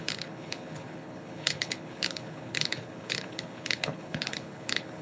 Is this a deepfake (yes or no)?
yes